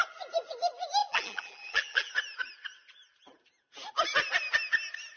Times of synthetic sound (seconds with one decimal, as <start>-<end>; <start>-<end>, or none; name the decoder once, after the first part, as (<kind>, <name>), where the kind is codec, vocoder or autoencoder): 1.0-2.1 (vocoder, BigVGAN v2)